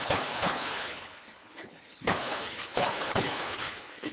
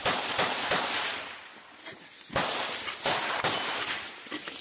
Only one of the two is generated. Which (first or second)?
first